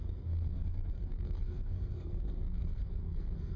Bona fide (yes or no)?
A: no